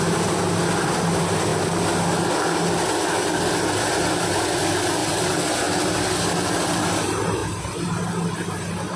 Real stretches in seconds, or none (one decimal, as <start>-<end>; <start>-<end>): 0.0-9.0